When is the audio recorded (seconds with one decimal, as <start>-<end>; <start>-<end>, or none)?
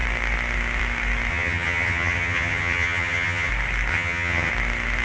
0.0-1.3; 3.5-3.9; 4.5-5.0